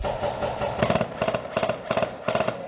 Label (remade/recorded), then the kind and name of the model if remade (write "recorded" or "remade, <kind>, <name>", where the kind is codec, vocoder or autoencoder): recorded